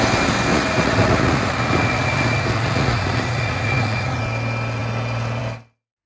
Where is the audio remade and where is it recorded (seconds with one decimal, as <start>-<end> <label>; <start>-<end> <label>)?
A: 0.0-0.5 recorded; 0.5-4.2 remade; 4.2-6.1 recorded